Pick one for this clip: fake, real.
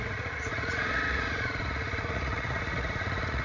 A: fake